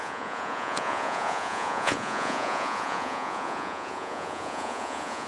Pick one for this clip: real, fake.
fake